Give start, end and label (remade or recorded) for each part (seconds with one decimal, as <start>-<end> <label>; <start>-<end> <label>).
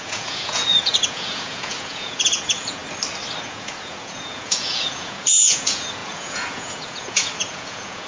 0.0-2.8 remade; 2.8-3.4 recorded; 3.4-8.1 remade